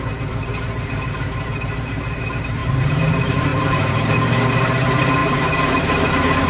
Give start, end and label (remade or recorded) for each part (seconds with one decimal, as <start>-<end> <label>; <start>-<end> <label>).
0.0-6.5 remade